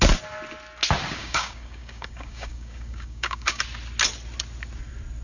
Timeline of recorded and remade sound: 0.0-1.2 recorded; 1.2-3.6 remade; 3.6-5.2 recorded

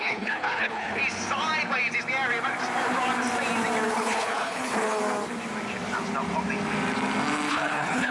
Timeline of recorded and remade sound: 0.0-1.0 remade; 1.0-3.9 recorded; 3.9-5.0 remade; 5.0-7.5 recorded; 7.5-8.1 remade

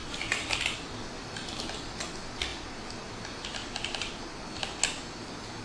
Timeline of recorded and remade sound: 0.0-5.6 recorded